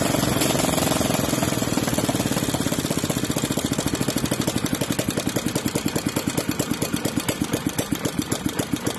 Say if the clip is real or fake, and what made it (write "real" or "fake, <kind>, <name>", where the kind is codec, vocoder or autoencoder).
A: real